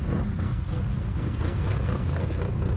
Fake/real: fake